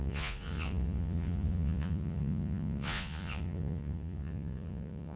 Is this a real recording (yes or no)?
no